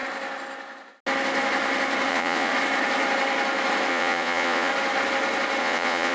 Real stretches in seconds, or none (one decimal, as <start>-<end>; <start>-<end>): 0.0-2.1; 2.5-3.9; 4.7-5.6